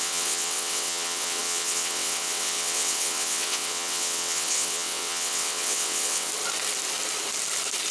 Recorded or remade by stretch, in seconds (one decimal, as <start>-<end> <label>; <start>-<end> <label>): 0.0-6.3 remade; 6.3-7.9 recorded